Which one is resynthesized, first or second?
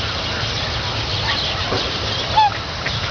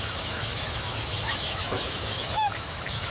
second